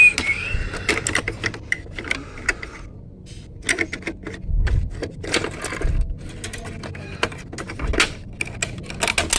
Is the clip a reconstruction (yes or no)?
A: no